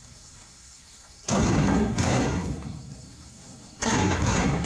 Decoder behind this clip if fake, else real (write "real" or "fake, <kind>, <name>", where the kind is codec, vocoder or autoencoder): fake, codec, SNAC